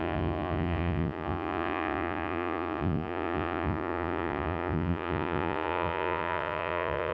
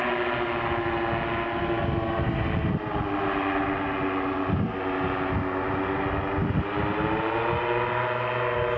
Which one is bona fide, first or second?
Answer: second